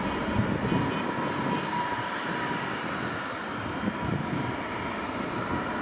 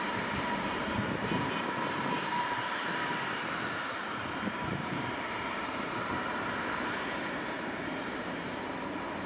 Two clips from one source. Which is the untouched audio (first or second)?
first